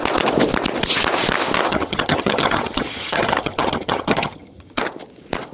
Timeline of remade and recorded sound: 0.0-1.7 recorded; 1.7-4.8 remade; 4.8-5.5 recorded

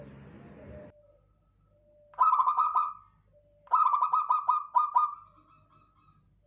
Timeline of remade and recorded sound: 0.0-2.4 recorded; 2.4-2.9 remade; 2.9-6.5 recorded